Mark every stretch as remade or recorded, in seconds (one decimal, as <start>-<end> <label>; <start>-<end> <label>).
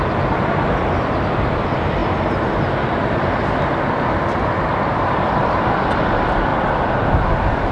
0.0-7.7 recorded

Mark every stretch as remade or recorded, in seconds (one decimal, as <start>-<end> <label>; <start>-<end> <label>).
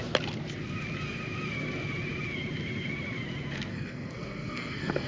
0.0-3.7 recorded; 3.7-5.1 remade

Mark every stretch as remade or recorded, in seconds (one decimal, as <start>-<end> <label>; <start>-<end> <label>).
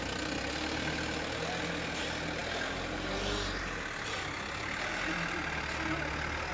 0.0-6.5 recorded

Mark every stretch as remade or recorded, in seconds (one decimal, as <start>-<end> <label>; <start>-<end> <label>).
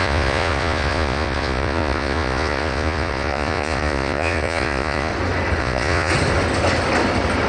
0.0-5.1 remade; 5.1-5.6 recorded; 5.6-6.1 remade; 6.1-7.5 recorded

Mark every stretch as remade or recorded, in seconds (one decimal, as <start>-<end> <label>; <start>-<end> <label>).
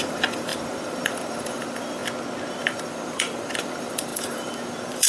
0.0-2.0 remade; 2.0-2.5 recorded; 2.5-5.1 remade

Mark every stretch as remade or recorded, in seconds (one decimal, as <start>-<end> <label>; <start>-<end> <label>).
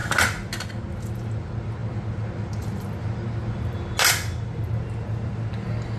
0.0-6.0 recorded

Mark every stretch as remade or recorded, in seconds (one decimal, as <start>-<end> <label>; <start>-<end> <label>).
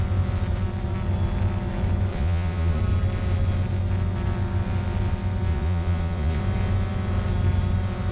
0.0-2.1 recorded; 2.1-2.8 remade; 2.8-5.5 recorded; 5.5-6.4 remade; 6.4-8.1 recorded